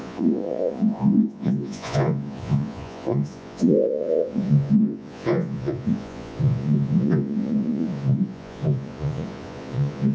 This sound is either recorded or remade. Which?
remade